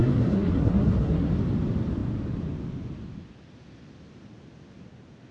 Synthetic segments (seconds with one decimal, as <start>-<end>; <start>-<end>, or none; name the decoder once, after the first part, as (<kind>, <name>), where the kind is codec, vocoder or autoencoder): 0.0-1.3 (codec, SNAC)